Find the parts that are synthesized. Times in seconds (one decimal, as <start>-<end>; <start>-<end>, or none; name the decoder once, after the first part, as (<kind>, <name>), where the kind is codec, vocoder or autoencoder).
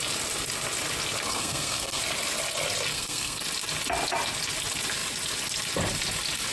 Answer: 1.3-2.0 (codec, SNAC); 2.9-3.4